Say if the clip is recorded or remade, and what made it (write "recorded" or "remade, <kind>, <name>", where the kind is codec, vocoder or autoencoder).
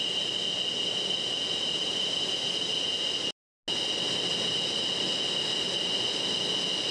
recorded